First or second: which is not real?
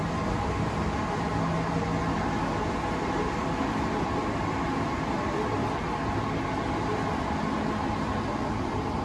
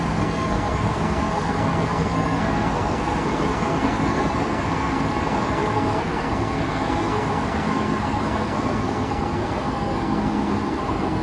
second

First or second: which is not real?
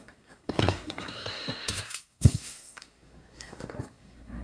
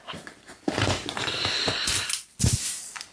first